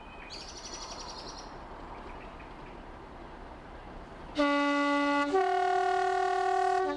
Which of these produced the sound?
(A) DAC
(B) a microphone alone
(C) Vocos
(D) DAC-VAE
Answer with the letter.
B